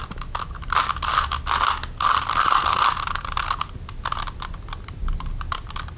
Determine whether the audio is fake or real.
real